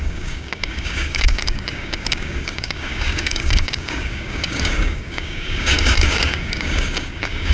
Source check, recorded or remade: remade